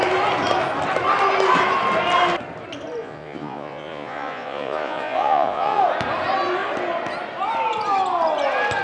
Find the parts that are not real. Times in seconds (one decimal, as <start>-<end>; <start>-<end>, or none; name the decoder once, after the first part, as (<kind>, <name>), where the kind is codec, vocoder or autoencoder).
3.0-5.8 (vocoder, Vocos)